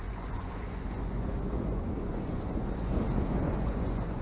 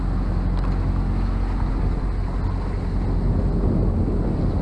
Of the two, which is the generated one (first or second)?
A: first